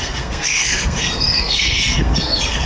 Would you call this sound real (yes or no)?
no